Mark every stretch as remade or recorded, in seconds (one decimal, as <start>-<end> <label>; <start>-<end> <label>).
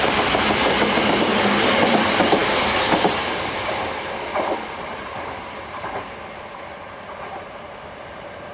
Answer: 0.0-8.5 recorded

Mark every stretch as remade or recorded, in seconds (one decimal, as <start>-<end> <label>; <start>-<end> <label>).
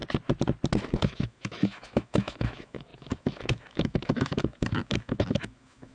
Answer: 0.0-0.8 recorded; 0.8-5.9 remade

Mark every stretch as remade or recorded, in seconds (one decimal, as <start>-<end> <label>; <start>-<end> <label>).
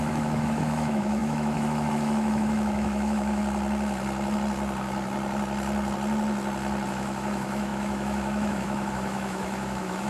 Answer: 0.0-3.4 remade; 3.4-6.9 recorded; 6.9-10.1 remade